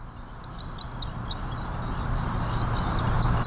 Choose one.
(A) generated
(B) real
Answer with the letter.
B